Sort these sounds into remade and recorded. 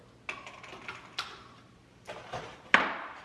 recorded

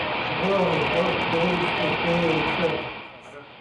recorded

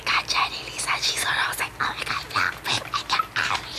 recorded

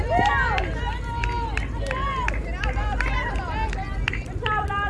recorded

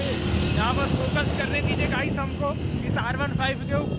recorded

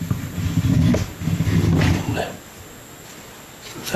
recorded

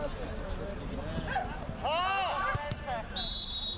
recorded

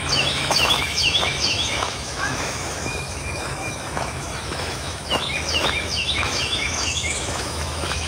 remade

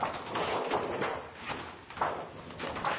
recorded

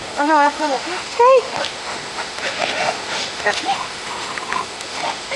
remade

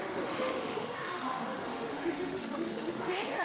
remade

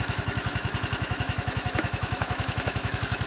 remade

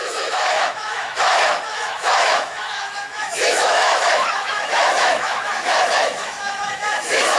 remade